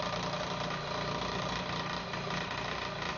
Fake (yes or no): no